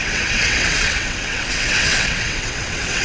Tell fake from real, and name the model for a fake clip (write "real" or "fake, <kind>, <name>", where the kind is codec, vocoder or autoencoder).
fake, vocoder, WaveNeXt